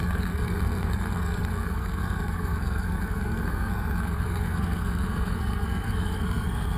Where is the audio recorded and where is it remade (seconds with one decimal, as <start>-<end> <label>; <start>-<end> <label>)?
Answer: 0.0-6.8 remade